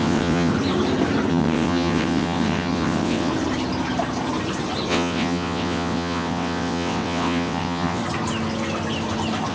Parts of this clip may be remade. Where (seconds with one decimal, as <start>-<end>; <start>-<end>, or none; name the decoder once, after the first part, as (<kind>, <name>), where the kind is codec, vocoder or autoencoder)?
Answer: 0.0-0.5 (vocoder, WaveNeXt); 1.3-3.3; 4.9-8.0